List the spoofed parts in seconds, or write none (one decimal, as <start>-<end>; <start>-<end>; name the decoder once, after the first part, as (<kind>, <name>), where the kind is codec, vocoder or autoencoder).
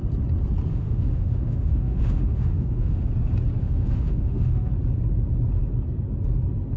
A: 0.7-3.1 (autoencoder, DAC-VAE); 3.6-4.7